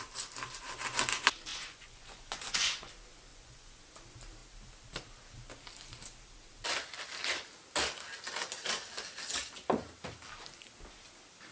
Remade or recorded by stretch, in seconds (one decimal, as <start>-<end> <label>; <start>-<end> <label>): 0.0-1.5 recorded; 1.5-2.9 remade; 2.9-3.3 recorded; 3.3-3.9 remade; 3.9-11.5 recorded